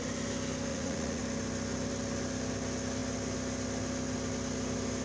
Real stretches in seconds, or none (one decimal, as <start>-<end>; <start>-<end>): 0.0-0.7; 1.2-5.0